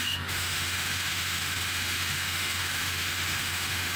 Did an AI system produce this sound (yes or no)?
yes